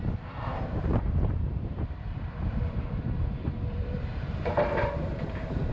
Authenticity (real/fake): fake